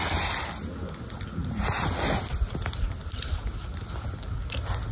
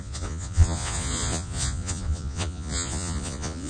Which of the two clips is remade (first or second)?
second